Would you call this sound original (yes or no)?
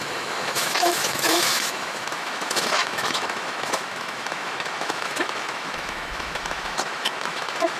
no